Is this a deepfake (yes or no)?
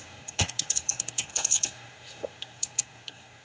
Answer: yes